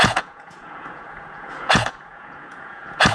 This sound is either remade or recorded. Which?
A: remade